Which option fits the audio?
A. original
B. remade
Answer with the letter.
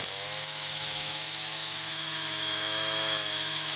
B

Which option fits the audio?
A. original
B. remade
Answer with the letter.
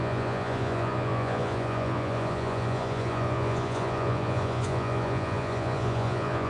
B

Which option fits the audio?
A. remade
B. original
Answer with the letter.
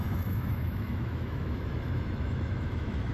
A